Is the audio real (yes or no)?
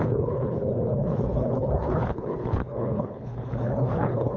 no